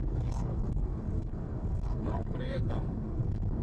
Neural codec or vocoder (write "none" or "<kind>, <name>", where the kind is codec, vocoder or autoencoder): codec, SNAC